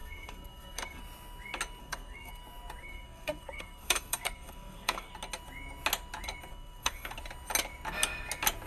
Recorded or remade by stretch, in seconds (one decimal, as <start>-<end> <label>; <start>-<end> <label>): 0.0-1.0 remade; 1.0-1.8 recorded; 1.8-2.3 remade; 2.3-2.8 recorded; 2.8-5.1 remade; 5.1-6.5 recorded; 6.5-7.2 remade; 7.2-8.7 recorded